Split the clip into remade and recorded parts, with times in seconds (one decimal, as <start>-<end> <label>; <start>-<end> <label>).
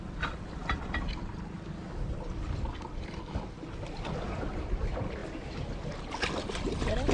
0.0-7.1 recorded